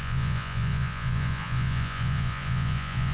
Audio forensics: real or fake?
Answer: fake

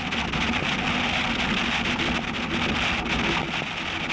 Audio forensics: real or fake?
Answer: real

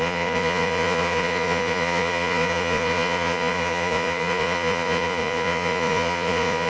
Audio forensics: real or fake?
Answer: fake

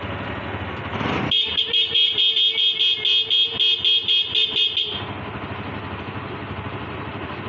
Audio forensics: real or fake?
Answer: real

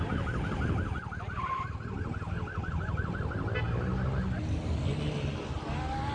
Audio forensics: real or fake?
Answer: real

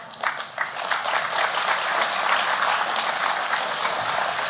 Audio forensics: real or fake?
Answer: real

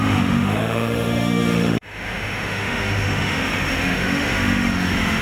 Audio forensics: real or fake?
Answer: fake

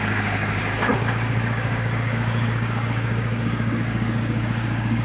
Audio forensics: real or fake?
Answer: fake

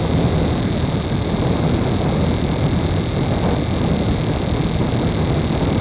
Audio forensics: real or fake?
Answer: real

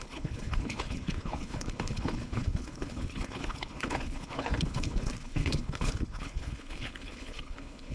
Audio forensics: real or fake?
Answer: fake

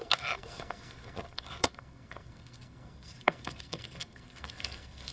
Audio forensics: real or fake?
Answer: fake